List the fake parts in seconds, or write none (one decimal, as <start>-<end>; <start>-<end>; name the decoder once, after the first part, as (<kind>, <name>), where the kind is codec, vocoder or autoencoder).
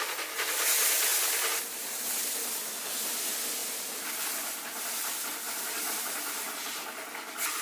none